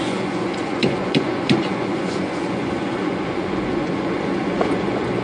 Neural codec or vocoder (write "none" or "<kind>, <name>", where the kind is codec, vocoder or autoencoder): vocoder, Vocos